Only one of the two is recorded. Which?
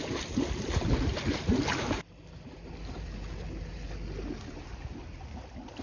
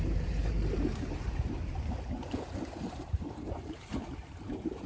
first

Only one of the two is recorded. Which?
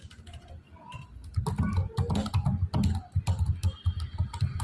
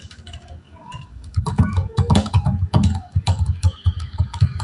first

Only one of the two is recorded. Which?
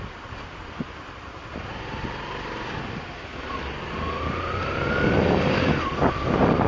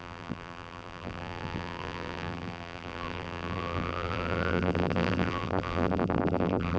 first